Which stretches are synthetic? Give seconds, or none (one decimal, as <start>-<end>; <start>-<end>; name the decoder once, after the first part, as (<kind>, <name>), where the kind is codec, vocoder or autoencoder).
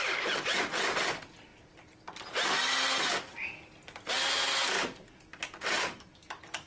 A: none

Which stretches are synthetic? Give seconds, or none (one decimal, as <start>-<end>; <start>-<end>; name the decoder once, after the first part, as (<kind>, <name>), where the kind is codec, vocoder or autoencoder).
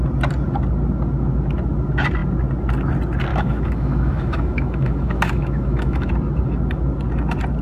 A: 3.3-6.1 (autoencoder, DAC-VAE)